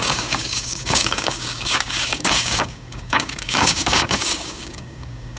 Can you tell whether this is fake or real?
fake